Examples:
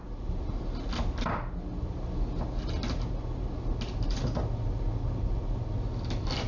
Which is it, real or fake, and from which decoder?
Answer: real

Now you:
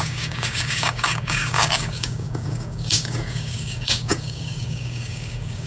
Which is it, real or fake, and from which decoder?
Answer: fake, codec, DAC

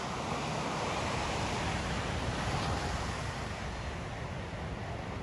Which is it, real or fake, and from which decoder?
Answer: real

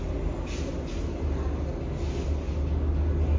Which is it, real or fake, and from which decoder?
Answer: real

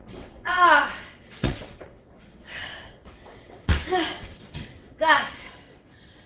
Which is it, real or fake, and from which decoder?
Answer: fake, vocoder, WaveNeXt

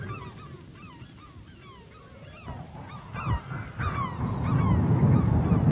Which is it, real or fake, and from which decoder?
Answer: real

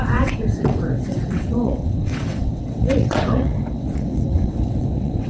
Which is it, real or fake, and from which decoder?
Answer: fake, vocoder, WaveNeXt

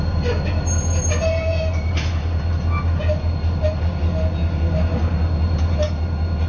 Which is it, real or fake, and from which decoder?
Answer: real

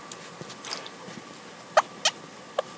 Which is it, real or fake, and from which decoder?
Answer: real